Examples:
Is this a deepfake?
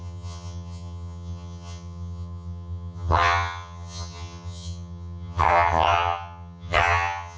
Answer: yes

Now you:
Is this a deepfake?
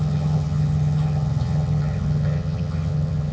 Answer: yes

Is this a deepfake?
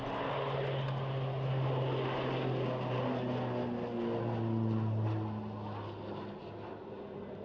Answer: no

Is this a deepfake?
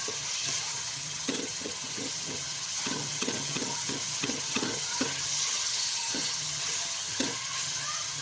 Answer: yes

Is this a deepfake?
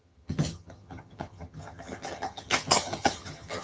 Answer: yes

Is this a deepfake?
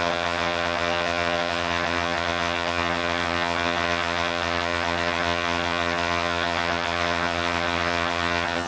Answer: yes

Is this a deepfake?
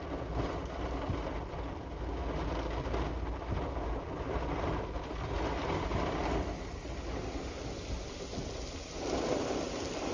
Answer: no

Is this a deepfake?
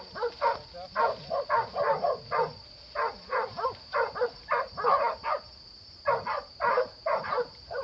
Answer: no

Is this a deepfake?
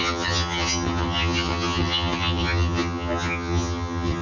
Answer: yes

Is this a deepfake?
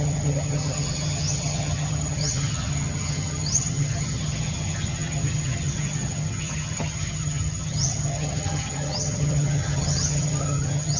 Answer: yes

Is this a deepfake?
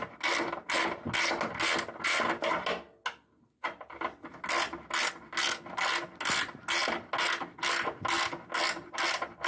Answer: no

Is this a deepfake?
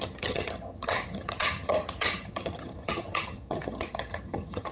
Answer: yes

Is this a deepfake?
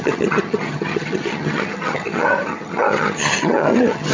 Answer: yes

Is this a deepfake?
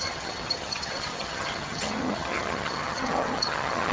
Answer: yes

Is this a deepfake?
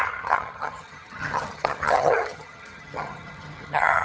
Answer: yes